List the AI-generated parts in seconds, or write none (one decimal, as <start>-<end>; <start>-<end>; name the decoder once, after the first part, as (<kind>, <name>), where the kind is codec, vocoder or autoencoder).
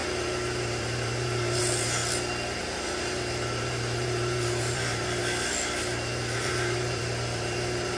0.0-2.0 (vocoder, BigVGAN v2); 2.6-5.2; 5.8-8.0